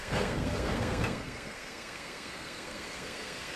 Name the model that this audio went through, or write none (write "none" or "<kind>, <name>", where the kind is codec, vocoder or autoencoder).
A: codec, SNAC